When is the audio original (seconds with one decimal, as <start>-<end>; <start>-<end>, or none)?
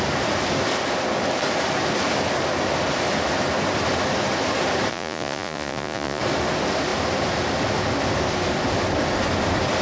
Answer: 0.0-4.9; 6.2-9.8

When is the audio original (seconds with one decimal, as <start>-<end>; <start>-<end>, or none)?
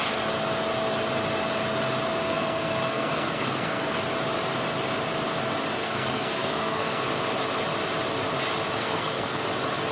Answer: 0.0-2.2; 4.0-5.8; 7.0-8.8; 9.5-9.9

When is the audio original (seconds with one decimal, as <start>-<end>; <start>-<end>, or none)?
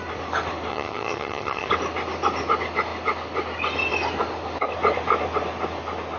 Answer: 0.0-0.7; 1.7-6.2